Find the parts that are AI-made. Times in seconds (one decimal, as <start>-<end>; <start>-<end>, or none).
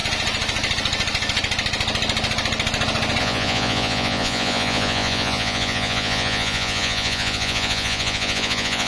3.2-8.9